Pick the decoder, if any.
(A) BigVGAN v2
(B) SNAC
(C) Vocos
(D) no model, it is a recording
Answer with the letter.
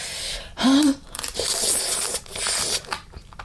D